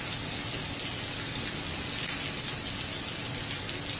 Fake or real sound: real